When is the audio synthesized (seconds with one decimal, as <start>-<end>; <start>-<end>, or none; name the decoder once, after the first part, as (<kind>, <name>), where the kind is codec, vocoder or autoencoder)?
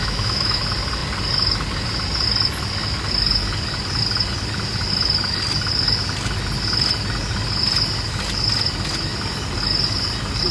0.0-0.6 (autoencoder, DAC-VAE)